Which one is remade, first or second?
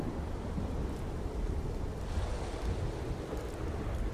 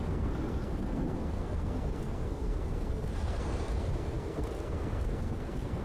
second